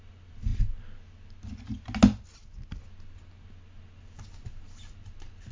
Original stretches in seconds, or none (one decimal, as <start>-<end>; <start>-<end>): 0.0-5.5